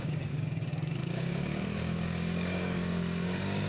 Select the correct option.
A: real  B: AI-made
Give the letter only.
B